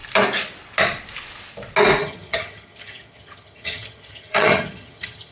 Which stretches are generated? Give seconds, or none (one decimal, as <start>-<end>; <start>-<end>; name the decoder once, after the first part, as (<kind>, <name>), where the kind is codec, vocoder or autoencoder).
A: 2.0-5.3 (vocoder, HiFi-GAN)